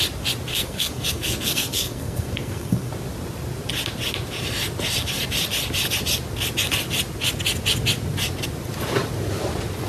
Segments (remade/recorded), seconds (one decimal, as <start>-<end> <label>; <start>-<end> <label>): 0.0-0.5 recorded; 0.5-2.9 remade; 2.9-9.9 recorded